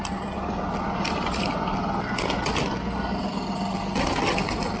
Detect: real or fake real